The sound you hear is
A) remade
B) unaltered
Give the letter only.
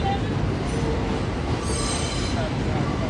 B